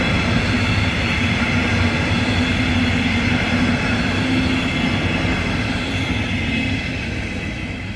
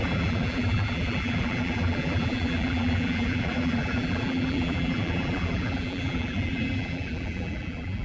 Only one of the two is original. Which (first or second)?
first